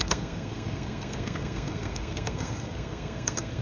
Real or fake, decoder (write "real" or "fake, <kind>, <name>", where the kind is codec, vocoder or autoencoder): fake, codec, SNAC